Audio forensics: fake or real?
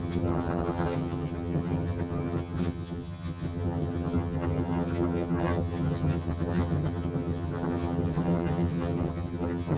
fake